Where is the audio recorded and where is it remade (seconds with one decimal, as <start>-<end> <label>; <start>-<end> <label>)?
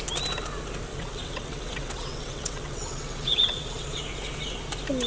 0.0-0.9 recorded; 0.9-4.0 remade; 4.0-5.1 recorded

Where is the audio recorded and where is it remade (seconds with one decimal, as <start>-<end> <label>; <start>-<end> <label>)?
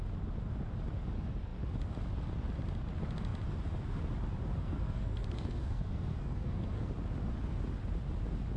0.0-4.6 recorded; 4.6-6.9 remade; 6.9-8.6 recorded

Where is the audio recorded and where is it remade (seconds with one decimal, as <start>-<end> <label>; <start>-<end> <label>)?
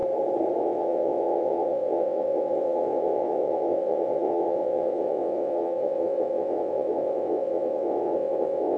0.0-0.6 recorded; 0.6-8.8 remade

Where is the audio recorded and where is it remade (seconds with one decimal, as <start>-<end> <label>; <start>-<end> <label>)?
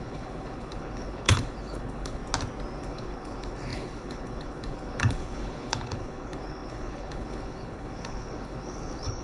0.0-2.2 remade; 2.2-2.8 recorded; 2.8-9.2 remade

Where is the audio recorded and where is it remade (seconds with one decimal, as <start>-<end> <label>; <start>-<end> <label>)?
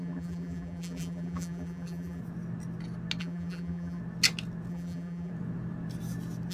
0.0-2.2 remade; 2.2-3.2 recorded; 3.2-4.0 remade; 4.0-4.7 recorded; 4.7-5.3 remade; 5.3-6.5 recorded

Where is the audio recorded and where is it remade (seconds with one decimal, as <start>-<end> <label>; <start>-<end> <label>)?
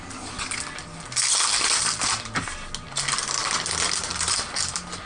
0.0-5.1 recorded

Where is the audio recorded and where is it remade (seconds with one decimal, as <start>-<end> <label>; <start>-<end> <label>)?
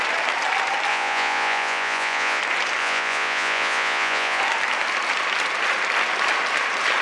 0.0-0.9 recorded; 0.9-2.4 remade; 2.4-2.8 recorded; 2.8-4.4 remade; 4.4-7.0 recorded